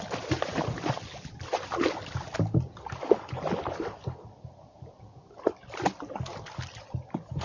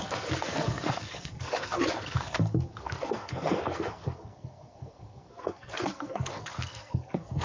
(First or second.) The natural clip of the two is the first